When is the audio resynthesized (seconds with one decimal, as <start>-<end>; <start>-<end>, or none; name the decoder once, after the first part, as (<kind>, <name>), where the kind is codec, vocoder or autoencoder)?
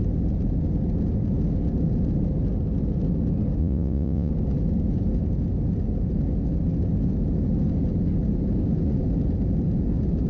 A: 3.6-4.3 (vocoder, Vocos)